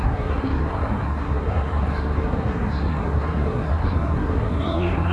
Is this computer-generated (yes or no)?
yes